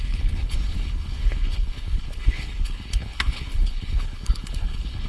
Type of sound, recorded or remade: remade